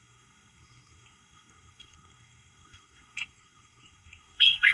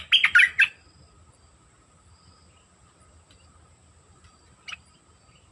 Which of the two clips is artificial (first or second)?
first